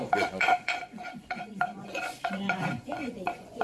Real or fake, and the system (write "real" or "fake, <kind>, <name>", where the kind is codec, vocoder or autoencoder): fake, vocoder, Vocos